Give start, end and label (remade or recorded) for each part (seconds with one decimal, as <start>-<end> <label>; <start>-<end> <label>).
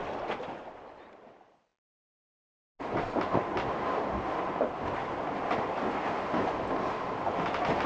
0.0-7.9 recorded